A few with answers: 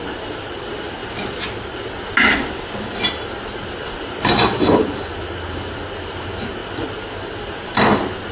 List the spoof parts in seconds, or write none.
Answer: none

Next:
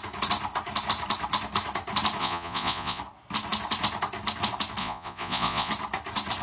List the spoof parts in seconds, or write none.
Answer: 2.2-3.0 (vocoder, Vocos); 4.8-5.7

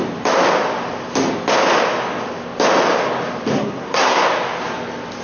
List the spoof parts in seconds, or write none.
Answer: 3.5-4.2 (codec, SNAC)

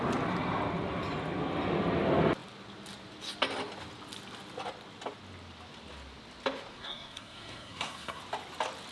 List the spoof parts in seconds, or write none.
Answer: 6.7-8.2 (codec, SNAC)

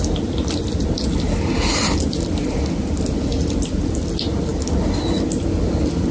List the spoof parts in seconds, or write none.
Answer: none

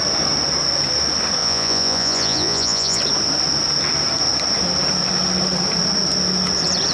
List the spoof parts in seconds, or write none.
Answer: 1.4-3.0 (vocoder, Vocos)

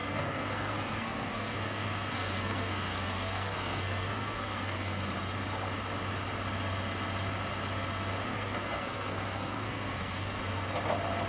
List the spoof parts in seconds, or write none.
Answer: 0.0-5.0 (codec, SNAC); 8.3-10.4

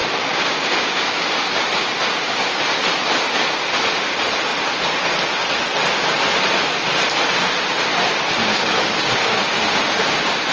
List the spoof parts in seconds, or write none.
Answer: 0.0-1.5 (codec, DAC); 8.5-9.4